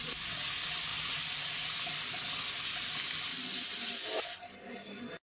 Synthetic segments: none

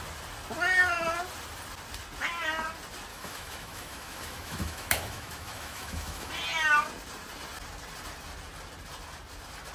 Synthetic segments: 3.1-6.3 (autoencoder, DAC-VAE)

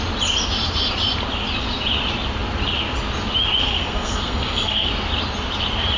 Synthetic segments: 3.6-4.9 (codec, SNAC)

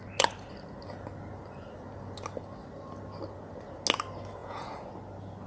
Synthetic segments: 4.4-4.9 (vocoder, Vocos)

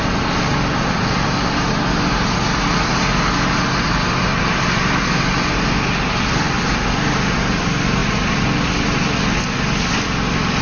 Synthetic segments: none